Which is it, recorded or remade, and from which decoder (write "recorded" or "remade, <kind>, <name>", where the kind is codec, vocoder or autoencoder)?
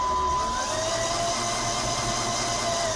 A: recorded